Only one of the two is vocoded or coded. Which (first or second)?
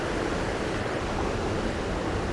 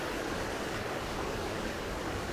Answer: second